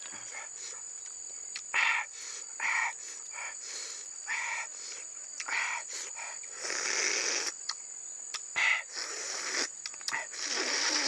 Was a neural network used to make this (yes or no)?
no